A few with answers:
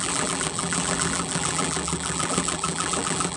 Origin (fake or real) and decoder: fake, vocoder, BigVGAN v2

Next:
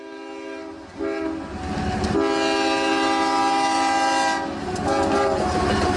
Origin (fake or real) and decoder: real